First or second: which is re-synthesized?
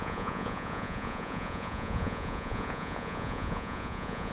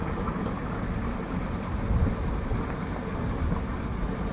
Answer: first